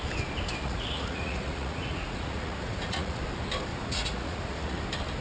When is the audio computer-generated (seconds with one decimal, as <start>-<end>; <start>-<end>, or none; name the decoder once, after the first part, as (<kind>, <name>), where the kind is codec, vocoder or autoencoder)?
0.6-3.2 (vocoder, Vocos); 3.7-4.8